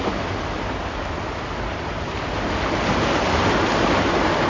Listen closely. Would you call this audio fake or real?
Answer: real